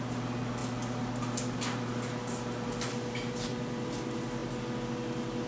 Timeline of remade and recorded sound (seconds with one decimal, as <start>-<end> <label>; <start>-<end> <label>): 0.0-5.5 recorded